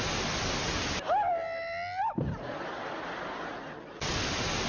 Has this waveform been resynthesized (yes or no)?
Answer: no